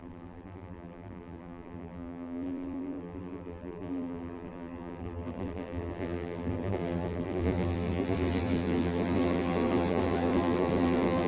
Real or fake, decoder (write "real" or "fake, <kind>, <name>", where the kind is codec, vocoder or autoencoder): fake, vocoder, BigVGAN v2